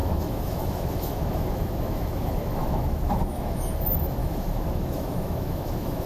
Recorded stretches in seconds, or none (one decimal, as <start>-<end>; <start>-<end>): 3.7-4.2